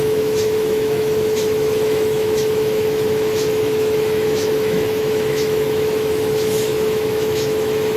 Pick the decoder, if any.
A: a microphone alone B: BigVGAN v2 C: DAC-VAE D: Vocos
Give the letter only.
C